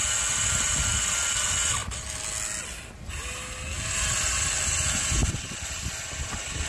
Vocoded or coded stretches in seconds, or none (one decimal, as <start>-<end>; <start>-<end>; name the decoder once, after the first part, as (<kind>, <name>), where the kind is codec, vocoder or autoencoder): none